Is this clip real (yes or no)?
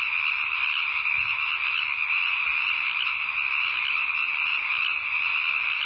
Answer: yes